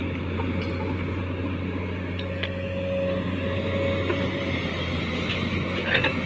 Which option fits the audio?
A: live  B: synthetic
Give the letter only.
A